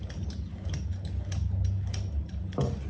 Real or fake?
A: real